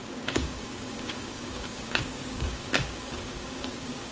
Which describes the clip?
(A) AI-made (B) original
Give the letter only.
A